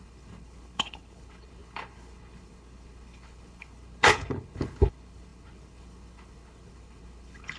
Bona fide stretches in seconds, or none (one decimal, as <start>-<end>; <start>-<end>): none